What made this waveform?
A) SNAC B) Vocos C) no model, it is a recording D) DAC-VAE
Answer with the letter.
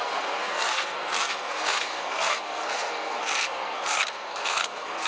A